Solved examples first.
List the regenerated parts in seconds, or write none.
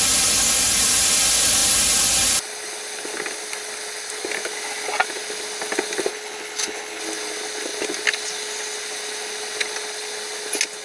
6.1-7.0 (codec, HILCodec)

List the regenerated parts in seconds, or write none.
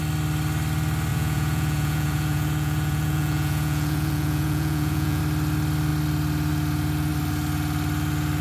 1.1-5.2 (vocoder, Vocos)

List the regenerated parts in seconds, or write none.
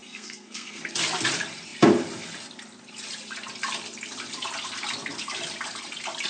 0.0-0.8 (codec, SNAC)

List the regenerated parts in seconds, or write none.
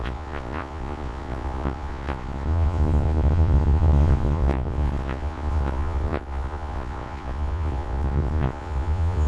0.0-9.3 (vocoder, Vocos)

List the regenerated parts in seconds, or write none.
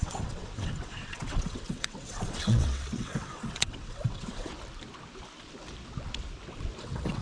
0.0-4.5 (vocoder, WaveNeXt); 6.8-7.2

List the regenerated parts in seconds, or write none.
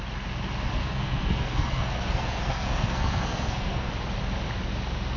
0.8-3.9 (codec, SNAC)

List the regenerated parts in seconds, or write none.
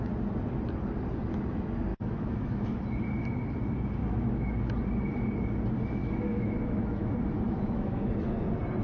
1.9-2.8 (autoencoder, DAC-VAE); 4.0-4.6; 6.0-8.1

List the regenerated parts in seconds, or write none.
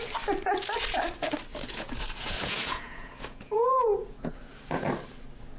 1.5-4.9 (vocoder, Vocos)